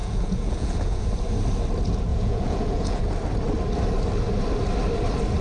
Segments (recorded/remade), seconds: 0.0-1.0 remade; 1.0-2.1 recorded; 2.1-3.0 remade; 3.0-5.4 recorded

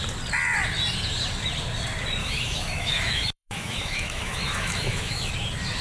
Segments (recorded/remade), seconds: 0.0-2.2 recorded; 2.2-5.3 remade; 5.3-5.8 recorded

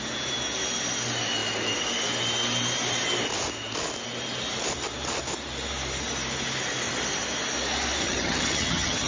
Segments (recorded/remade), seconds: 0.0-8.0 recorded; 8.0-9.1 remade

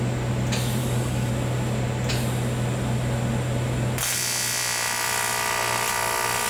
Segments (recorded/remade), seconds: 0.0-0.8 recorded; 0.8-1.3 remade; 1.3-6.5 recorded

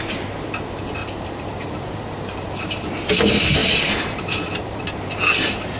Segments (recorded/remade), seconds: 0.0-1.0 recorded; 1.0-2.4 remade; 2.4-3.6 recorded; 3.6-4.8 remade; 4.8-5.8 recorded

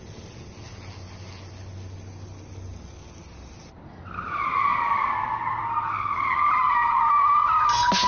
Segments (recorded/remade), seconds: 0.0-8.1 recorded